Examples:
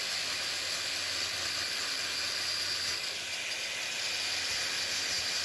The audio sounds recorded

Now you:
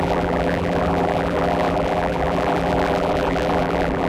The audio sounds remade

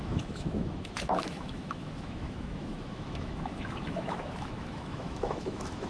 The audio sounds remade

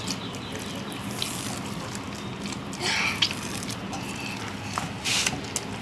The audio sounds recorded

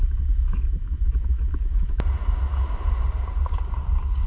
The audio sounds recorded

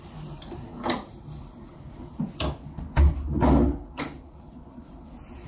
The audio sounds recorded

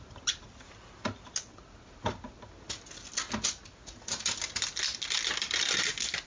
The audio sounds recorded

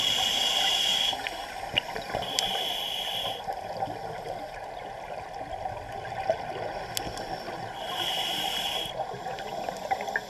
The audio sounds recorded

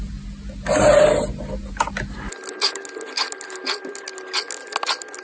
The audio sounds recorded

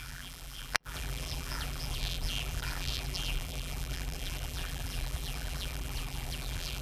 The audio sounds remade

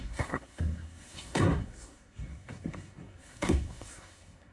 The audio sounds remade